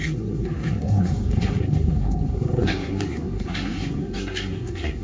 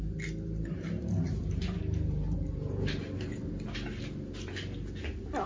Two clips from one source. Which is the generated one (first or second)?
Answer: first